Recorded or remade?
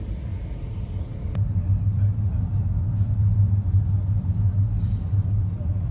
recorded